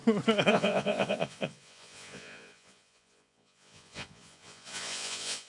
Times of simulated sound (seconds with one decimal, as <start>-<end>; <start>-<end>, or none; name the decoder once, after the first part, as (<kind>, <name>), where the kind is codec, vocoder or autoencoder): 0.5-5.5 (vocoder, Vocos)